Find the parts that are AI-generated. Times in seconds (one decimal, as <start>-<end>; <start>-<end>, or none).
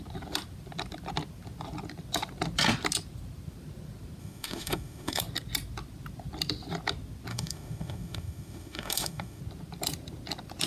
4.2-5.2; 7.3-9.4